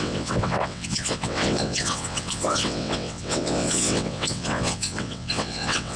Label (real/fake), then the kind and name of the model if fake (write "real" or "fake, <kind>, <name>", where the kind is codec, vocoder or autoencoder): fake, vocoder, WaveNeXt